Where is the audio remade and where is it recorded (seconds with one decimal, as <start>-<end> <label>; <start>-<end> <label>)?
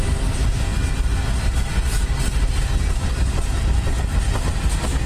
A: 0.0-5.1 recorded